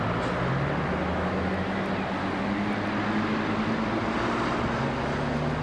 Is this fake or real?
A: real